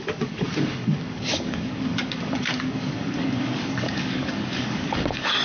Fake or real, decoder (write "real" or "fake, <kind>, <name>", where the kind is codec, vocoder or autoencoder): fake, codec, DAC